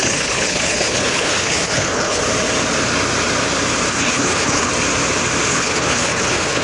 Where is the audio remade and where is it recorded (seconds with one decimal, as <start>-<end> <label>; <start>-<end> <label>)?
0.0-2.2 remade; 2.2-3.9 recorded; 3.9-4.7 remade; 4.7-5.5 recorded; 5.5-6.6 remade